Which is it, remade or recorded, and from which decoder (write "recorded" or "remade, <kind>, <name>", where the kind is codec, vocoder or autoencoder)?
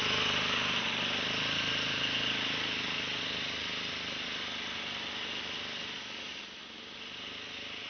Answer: recorded